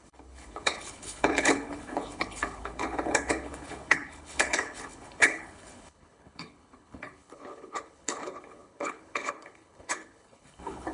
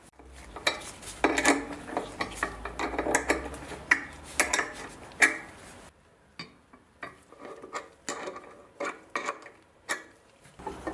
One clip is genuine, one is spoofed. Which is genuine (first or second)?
second